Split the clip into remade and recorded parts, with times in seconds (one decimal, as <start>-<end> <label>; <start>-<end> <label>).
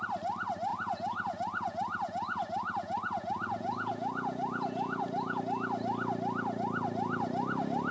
0.0-0.7 recorded; 0.7-5.4 remade; 5.4-7.9 recorded